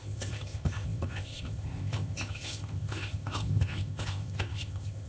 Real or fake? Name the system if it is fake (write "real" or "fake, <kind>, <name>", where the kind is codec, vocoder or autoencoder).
fake, codec, ZipCodec